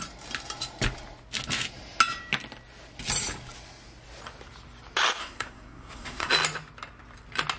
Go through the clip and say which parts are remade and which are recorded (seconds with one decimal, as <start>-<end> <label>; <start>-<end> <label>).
0.0-5.2 recorded; 5.2-6.3 remade; 6.3-7.6 recorded